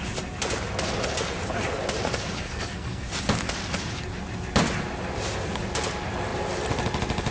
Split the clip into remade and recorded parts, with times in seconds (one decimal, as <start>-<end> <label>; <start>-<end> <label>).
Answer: 0.0-2.4 recorded; 2.4-3.1 remade; 3.1-7.3 recorded